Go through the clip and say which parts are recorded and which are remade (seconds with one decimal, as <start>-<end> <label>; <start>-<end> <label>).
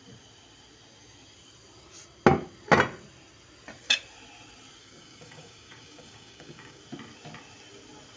0.0-4.8 recorded; 4.8-6.8 remade; 6.8-8.2 recorded